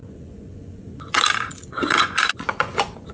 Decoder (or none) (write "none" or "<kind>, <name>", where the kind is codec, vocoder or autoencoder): vocoder, Vocos